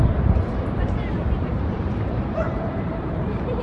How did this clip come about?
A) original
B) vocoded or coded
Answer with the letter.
B